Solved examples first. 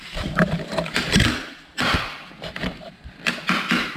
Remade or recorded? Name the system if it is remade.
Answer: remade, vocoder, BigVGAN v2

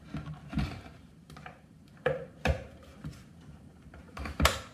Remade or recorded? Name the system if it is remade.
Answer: remade, vocoder, BigVGAN v2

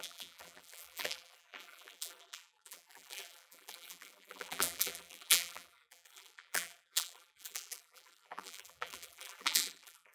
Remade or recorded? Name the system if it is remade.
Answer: remade, vocoder, BigVGAN v2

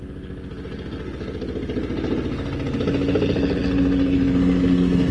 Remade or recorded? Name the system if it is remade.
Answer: recorded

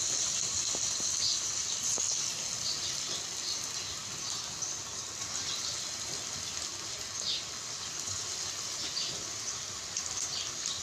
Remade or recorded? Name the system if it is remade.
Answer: recorded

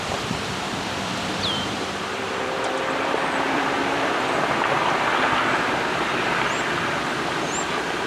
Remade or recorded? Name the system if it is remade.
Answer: remade, vocoder, BigVGAN v2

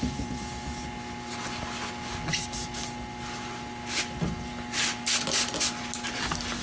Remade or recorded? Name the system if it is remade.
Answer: recorded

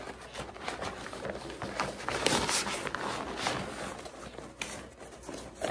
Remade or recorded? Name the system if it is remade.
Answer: recorded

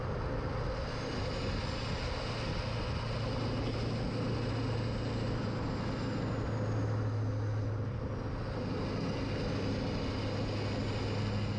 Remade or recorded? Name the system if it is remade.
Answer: recorded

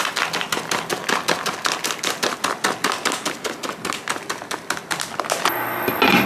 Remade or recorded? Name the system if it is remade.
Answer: recorded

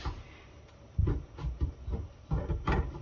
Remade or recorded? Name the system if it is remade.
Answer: recorded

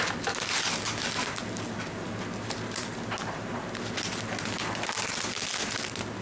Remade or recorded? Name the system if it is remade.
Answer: recorded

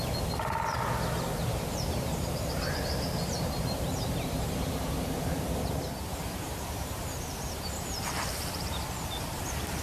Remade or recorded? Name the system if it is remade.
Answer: remade, vocoder, BigVGAN v2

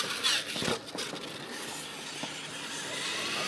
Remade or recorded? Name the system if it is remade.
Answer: recorded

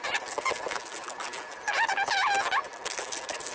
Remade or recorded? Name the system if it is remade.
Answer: recorded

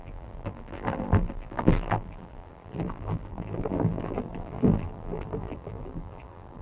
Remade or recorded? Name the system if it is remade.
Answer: remade, vocoder, BigVGAN v2